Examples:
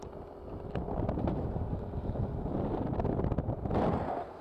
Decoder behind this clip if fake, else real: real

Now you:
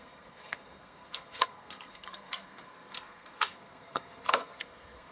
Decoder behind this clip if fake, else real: fake, codec, SNAC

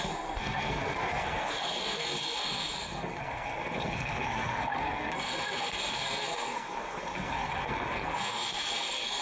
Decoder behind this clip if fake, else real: fake, codec, SNAC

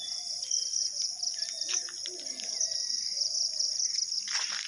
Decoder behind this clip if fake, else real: real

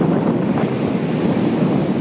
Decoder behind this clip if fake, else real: real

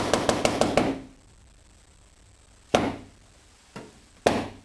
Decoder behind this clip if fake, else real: real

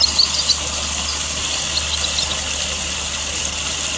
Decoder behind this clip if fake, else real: real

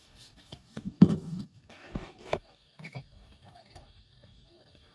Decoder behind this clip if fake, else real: fake, codec, DAC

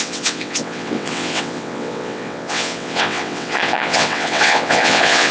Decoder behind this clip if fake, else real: fake, vocoder, WaveNeXt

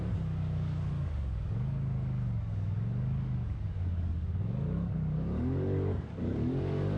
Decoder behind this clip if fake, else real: fake, codec, DAC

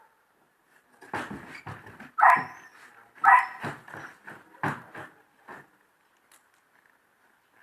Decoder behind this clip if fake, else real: real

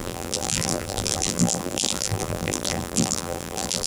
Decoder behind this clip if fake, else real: fake, vocoder, BigVGAN v2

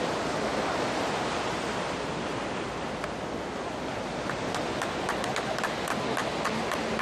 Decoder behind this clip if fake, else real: real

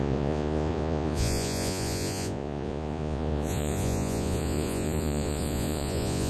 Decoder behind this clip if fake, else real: fake, vocoder, Vocos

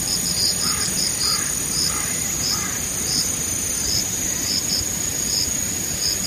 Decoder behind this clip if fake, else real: real